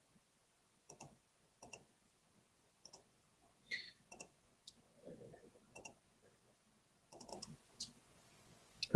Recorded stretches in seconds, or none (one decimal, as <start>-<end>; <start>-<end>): none